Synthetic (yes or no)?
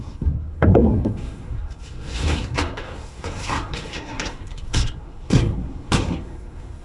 yes